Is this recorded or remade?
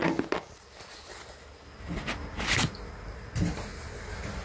recorded